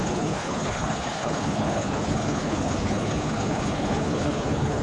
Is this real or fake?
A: fake